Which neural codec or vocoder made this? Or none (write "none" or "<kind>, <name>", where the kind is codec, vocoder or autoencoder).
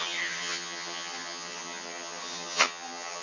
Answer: vocoder, HiFi-GAN